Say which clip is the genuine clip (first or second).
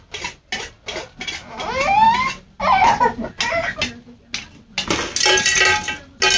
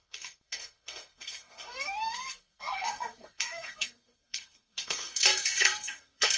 first